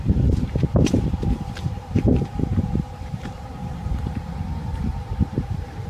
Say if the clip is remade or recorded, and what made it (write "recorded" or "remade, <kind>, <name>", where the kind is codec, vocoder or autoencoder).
remade, vocoder, BigVGAN v2